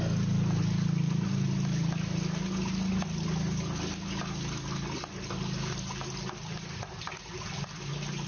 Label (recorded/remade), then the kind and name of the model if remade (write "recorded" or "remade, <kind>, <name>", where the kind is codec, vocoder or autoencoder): recorded